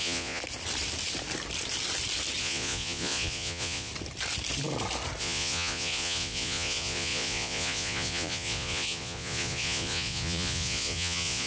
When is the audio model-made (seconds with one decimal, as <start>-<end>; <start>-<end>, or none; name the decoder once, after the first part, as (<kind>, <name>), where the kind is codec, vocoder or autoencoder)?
0.0-0.4 (vocoder, Vocos); 2.4-3.9; 5.2-11.5